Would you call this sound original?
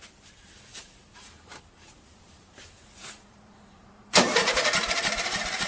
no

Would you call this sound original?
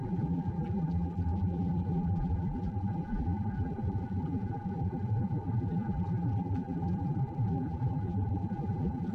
no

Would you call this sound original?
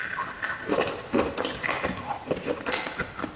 yes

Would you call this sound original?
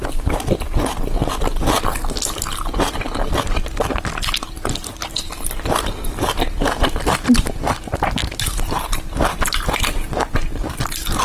yes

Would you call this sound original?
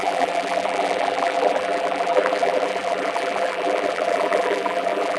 no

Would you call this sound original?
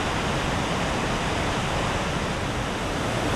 yes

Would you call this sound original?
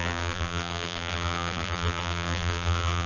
no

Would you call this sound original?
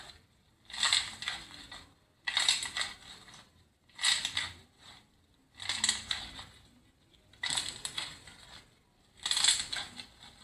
yes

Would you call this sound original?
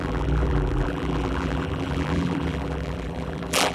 no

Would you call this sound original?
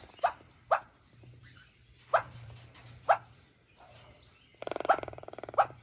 no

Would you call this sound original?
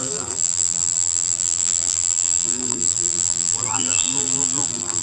no